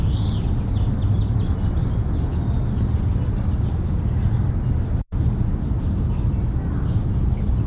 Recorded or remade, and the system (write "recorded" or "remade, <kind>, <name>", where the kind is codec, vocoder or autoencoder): recorded